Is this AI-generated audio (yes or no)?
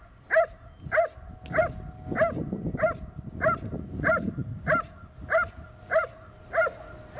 no